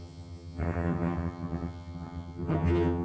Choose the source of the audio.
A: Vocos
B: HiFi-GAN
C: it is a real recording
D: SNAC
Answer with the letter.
B